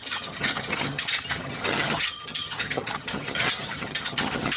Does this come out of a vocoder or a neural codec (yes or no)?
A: yes